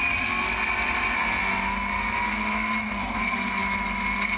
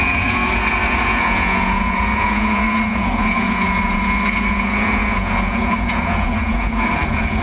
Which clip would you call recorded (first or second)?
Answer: first